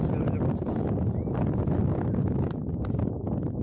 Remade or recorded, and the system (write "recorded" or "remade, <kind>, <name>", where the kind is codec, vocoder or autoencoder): recorded